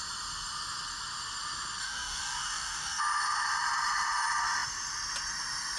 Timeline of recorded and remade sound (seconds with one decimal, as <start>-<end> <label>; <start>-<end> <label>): 0.0-1.8 recorded; 1.8-3.0 remade; 3.0-5.8 recorded